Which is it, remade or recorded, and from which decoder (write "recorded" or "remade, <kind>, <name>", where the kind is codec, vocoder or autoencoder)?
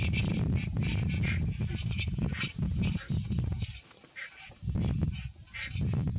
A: recorded